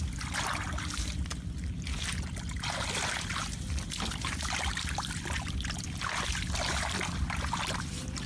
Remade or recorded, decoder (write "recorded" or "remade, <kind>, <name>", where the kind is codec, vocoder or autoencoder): recorded